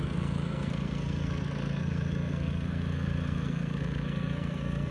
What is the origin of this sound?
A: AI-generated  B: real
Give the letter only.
A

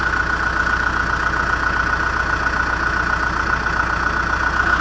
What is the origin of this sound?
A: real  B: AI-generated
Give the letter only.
A